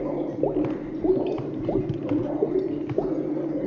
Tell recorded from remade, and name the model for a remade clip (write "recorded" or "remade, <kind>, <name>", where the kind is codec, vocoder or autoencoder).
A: recorded